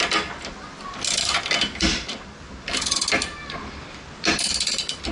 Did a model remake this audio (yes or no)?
no